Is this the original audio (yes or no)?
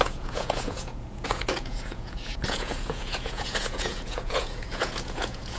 no